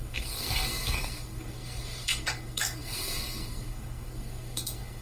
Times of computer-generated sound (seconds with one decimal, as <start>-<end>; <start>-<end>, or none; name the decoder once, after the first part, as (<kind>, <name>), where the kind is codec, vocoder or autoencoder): 0.0-5.0 (codec, SNAC)